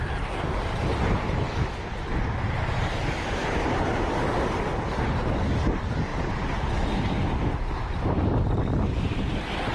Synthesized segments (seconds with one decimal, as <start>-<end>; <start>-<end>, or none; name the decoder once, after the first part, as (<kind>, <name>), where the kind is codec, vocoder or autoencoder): 3.4-4.2 (vocoder, BigVGAN v2)